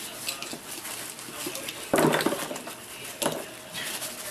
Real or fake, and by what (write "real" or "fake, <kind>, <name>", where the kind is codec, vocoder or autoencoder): real